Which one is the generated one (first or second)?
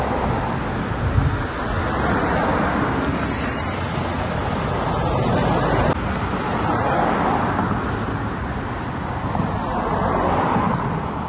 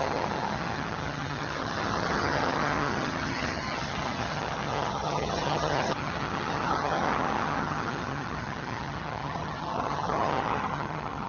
second